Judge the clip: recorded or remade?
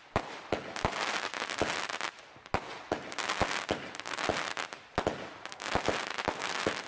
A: recorded